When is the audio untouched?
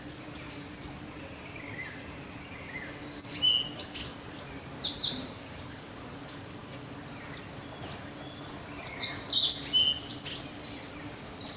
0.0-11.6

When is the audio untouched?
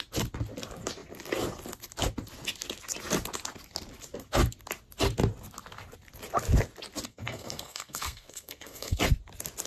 0.0-7.1; 9.0-9.7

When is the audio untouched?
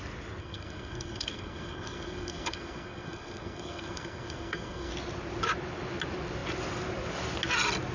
0.0-0.4; 4.9-7.9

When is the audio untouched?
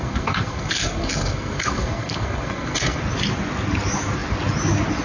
3.0-5.0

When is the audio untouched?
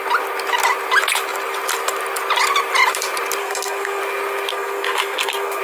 0.0-3.4; 4.0-4.5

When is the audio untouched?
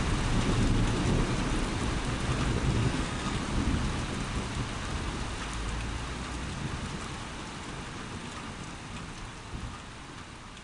0.0-2.8; 3.4-10.6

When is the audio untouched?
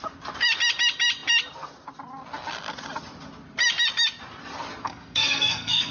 0.0-4.8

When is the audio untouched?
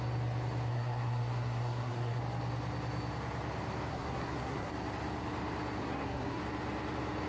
0.0-0.7; 2.2-3.9; 4.7-5.8; 6.4-7.3